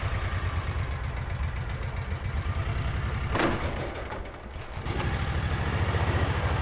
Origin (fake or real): real